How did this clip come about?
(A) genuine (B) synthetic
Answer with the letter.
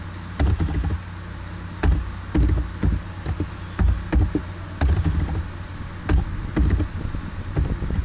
A